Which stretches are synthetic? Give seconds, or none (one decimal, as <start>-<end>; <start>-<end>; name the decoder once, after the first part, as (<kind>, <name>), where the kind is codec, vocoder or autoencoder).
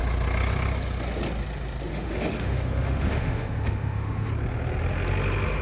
1.9-4.3 (autoencoder, DAC-VAE)